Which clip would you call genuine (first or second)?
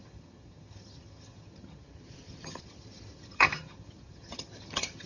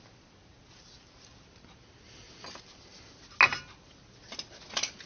second